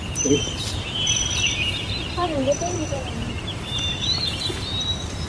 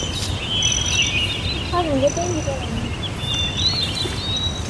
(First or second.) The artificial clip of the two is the first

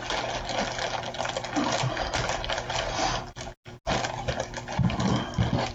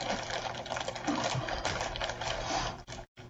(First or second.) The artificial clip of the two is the second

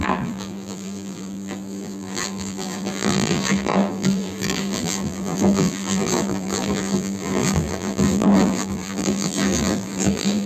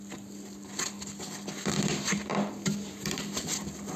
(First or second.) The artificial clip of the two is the first